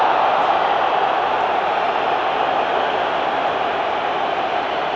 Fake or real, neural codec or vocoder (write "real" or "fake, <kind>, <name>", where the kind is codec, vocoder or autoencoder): real